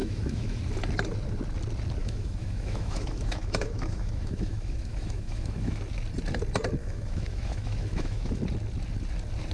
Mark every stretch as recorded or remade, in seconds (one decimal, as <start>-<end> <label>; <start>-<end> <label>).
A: 0.0-0.6 remade; 0.6-2.0 recorded; 2.0-5.8 remade; 5.8-6.8 recorded; 6.8-8.4 remade; 8.4-9.5 recorded